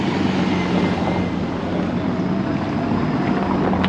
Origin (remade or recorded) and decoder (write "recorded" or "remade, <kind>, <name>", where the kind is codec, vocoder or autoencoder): recorded